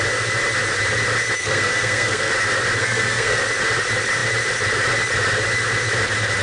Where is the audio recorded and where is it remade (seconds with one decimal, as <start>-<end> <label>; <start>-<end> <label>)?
0.0-1.4 recorded; 1.4-2.3 remade; 2.3-2.8 recorded; 2.8-3.4 remade; 3.4-6.4 recorded